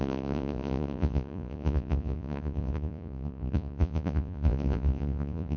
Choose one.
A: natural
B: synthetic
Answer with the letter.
B